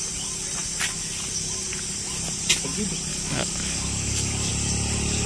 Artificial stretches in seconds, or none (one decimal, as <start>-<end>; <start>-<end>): 3.1-4.5